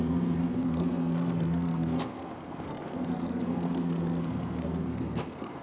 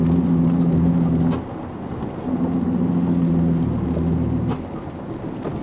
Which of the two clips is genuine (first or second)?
second